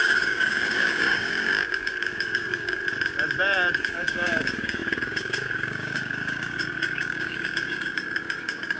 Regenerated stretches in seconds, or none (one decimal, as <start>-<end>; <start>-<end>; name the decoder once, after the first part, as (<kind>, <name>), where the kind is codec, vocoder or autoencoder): 0.0-2.8 (codec, DAC); 3.8-8.8